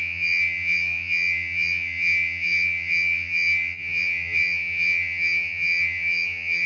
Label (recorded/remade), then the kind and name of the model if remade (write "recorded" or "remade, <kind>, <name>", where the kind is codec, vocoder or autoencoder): remade, vocoder, HiFi-GAN